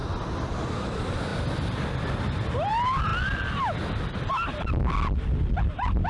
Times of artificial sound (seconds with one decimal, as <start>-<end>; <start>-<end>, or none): 0.9-6.1